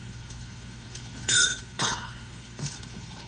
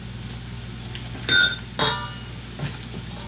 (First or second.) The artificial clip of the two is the first